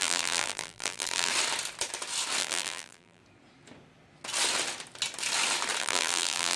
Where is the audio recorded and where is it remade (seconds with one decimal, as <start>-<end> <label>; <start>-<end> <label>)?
0.0-1.3 remade; 1.3-2.4 recorded; 2.4-3.2 remade; 3.2-5.8 recorded; 5.8-6.6 remade